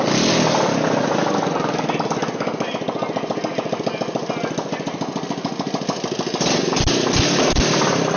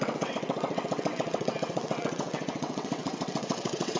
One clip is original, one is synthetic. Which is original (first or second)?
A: first